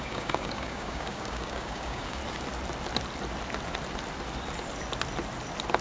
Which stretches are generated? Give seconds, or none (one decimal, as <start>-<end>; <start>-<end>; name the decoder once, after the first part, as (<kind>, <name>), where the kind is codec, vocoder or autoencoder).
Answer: 0.0-2.2 (codec, DAC)